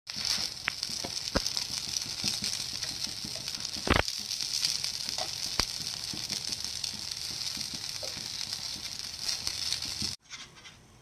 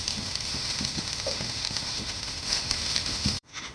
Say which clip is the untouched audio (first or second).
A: first